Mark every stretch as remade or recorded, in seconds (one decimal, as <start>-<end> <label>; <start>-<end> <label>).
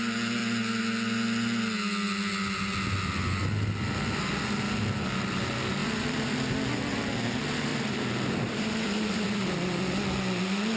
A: 0.0-5.8 recorded; 5.8-6.3 remade; 6.3-7.7 recorded; 7.7-9.8 remade; 9.8-10.8 recorded